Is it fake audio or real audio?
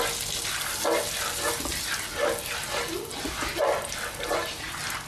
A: real